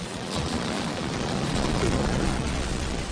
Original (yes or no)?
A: no